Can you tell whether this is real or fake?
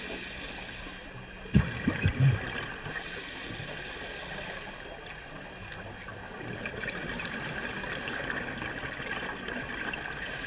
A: real